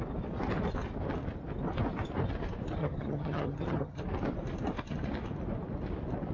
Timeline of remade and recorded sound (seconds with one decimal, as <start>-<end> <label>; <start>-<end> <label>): 0.0-2.8 recorded; 2.8-4.0 remade; 4.0-6.3 recorded